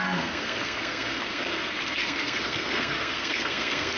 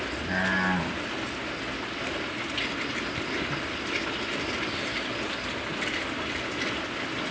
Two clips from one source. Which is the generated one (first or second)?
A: first